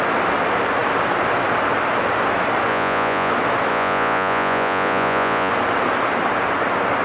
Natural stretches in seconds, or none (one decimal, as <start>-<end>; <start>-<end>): 0.0-2.7; 3.3-3.7; 5.5-7.0